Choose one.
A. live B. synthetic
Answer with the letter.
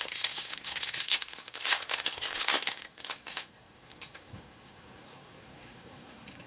B